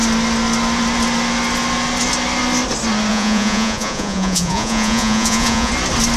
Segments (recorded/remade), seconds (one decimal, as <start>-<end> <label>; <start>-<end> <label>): 0.0-3.1 recorded; 3.1-5.7 remade; 5.7-6.2 recorded